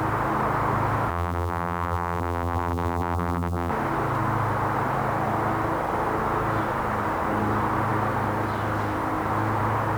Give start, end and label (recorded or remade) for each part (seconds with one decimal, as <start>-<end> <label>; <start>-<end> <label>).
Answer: 0.0-1.1 recorded; 1.1-3.7 remade; 3.7-10.0 recorded

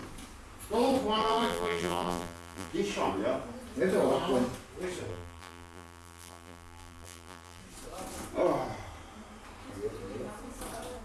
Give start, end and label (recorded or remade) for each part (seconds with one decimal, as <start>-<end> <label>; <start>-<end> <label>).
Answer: 0.0-1.2 recorded; 1.2-2.7 remade; 2.7-5.1 recorded; 5.1-7.6 remade; 7.6-11.0 recorded

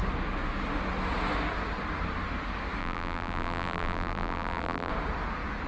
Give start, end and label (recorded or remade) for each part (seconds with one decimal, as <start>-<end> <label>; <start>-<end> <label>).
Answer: 0.0-2.8 recorded; 2.8-4.9 remade; 4.9-5.7 recorded

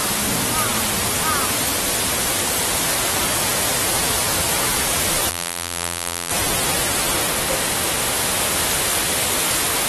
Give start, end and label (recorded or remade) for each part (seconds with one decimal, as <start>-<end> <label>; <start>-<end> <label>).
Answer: 0.0-5.3 recorded; 5.3-6.3 remade; 6.3-9.9 recorded